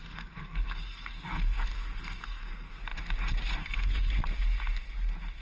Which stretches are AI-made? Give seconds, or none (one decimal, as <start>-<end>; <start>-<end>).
0.0-2.8; 3.6-4.1